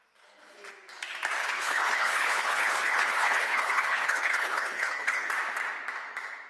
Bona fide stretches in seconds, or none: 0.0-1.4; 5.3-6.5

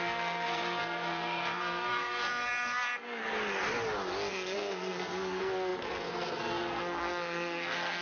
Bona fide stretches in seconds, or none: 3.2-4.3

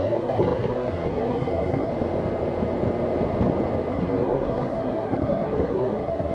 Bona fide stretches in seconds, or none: 1.9-3.9